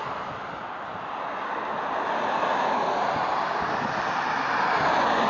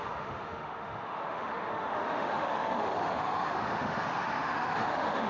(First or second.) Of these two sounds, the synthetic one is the second